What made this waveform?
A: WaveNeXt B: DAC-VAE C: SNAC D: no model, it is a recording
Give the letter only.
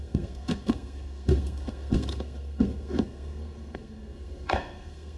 C